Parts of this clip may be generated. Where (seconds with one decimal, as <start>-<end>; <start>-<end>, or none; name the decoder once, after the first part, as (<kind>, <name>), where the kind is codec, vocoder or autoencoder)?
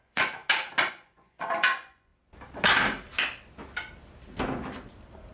0.0-0.4 (vocoder, Vocos); 0.9-2.1